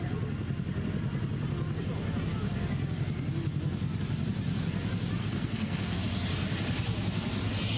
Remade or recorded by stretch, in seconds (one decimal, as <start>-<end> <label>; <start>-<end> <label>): 0.0-5.2 recorded; 5.2-6.0 remade; 6.0-7.8 recorded